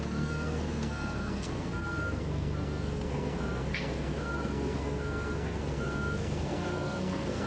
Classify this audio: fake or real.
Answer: fake